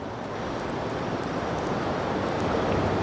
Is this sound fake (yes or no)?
no